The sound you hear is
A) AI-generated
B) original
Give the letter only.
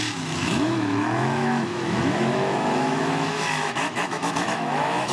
A